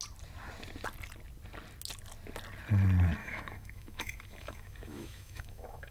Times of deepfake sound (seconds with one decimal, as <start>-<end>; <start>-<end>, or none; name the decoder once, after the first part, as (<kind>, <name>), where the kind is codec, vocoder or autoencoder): 3.2-5.9 (autoencoder, DAC-VAE)